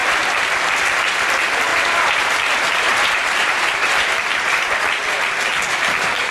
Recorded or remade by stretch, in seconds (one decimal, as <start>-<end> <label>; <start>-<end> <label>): 0.0-1.7 recorded; 1.7-2.3 remade; 2.3-2.9 recorded; 2.9-4.8 remade; 4.8-6.3 recorded